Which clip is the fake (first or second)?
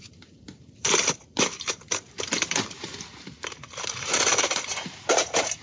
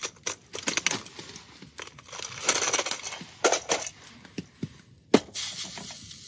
first